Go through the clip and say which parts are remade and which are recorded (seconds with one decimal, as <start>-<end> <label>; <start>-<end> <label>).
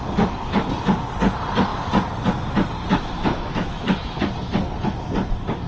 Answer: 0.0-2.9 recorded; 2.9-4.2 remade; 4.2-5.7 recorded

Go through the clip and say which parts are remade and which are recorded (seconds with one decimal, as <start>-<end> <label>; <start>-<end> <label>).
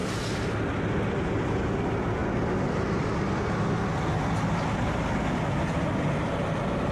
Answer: 0.0-6.9 recorded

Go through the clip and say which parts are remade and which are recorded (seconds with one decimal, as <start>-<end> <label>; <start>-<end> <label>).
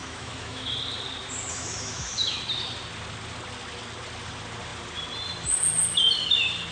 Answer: 0.0-0.7 remade; 0.7-1.5 recorded; 1.5-2.4 remade; 2.4-6.7 recorded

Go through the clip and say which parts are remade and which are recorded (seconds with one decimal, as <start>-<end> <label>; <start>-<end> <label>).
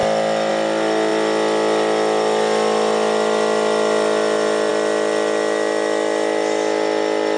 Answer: 0.0-7.4 recorded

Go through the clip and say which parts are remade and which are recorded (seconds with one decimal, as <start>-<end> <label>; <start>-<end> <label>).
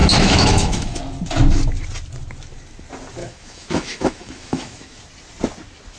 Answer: 0.0-1.0 remade; 1.0-3.2 recorded; 3.2-5.0 remade; 5.0-6.0 recorded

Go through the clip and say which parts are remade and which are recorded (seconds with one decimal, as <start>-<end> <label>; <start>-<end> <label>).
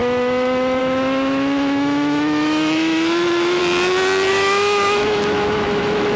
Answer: 0.0-3.6 remade; 3.6-4.3 recorded; 4.3-6.2 remade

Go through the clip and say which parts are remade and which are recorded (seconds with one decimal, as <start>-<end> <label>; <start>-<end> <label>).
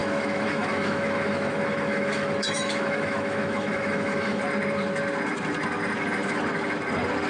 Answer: 0.0-4.4 remade; 4.4-7.3 recorded